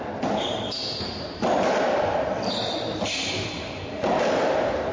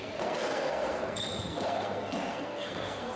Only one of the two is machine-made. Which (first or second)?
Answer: second